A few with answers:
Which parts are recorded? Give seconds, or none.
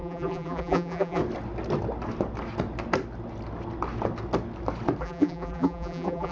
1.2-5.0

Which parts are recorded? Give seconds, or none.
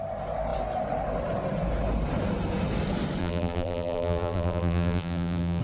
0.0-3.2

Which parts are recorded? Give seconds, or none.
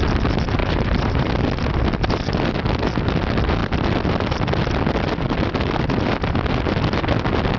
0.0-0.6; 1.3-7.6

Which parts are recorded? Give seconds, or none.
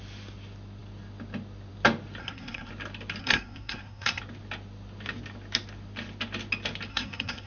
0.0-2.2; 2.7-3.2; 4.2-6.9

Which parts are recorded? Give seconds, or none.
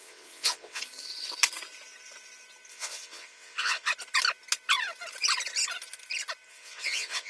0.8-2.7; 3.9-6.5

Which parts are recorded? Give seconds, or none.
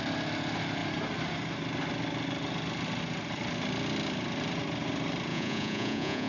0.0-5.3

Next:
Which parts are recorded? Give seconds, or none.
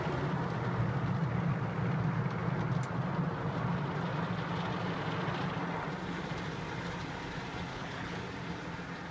0.0-7.7; 8.2-9.1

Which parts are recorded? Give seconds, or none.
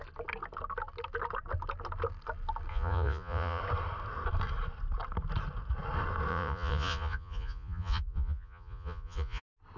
0.0-2.7; 3.6-6.3; 9.4-9.8